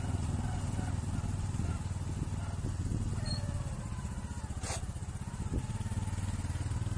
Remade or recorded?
recorded